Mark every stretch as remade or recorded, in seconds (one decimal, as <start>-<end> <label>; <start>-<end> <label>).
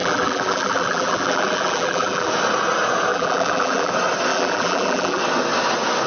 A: 0.0-2.3 remade; 2.3-3.1 recorded; 3.1-3.9 remade; 3.9-4.3 recorded; 4.3-5.2 remade; 5.2-6.1 recorded